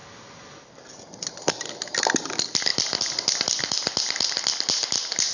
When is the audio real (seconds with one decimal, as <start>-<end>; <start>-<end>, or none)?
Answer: 1.5-2.7; 4.5-5.3